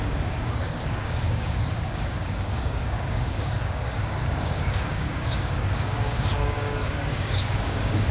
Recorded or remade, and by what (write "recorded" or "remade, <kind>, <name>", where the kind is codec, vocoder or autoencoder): remade, codec, DAC